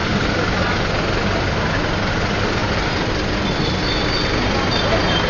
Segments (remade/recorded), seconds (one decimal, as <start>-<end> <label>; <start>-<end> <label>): 0.0-5.3 recorded